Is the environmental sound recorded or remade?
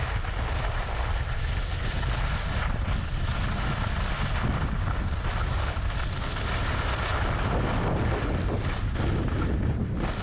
recorded